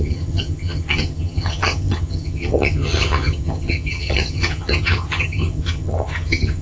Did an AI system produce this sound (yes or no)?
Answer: yes